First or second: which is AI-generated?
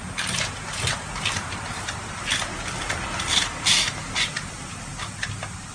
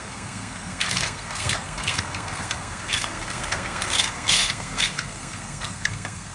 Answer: second